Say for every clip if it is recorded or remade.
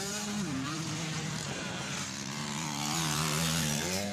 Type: remade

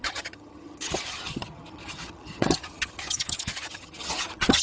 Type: remade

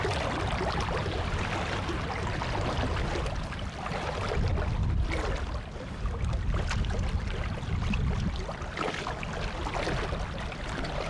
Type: recorded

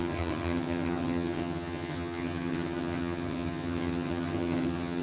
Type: remade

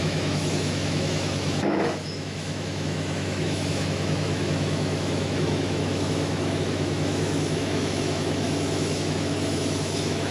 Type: remade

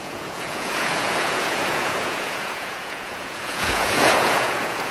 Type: remade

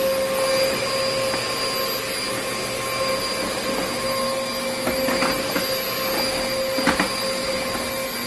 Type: recorded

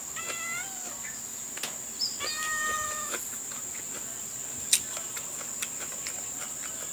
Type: recorded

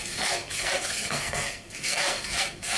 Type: remade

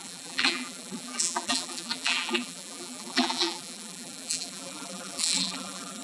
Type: remade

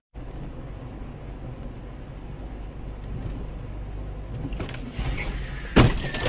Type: recorded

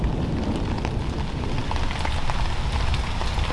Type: recorded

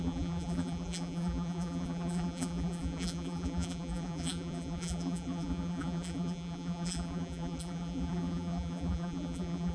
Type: remade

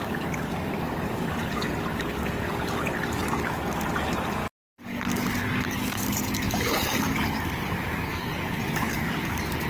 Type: remade